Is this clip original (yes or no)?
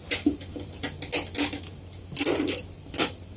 yes